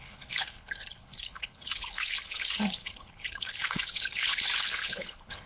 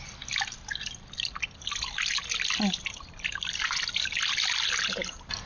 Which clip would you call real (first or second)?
second